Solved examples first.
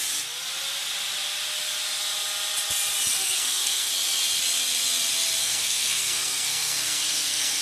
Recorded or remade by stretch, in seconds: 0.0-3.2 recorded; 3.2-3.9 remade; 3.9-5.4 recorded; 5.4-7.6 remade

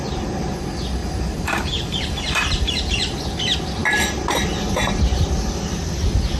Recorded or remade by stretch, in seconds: 0.0-1.0 recorded; 1.0-2.8 remade; 2.8-6.4 recorded

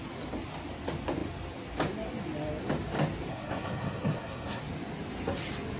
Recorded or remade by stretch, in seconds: 0.0-3.3 recorded; 3.3-4.6 remade; 4.6-5.8 recorded

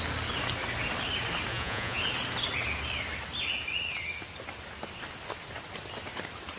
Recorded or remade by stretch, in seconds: 0.0-1.5 recorded; 1.5-2.0 remade; 2.0-6.6 recorded